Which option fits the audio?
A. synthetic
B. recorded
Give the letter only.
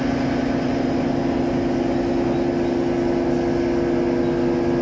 B